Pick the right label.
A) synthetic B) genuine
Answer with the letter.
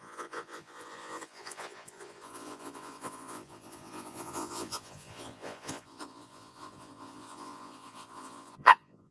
A